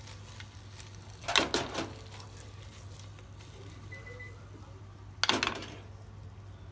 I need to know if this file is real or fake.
real